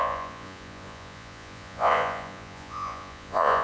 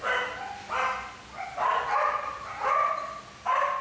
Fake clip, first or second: first